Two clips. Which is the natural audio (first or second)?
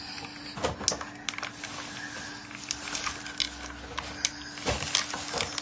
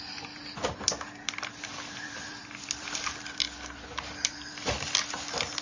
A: first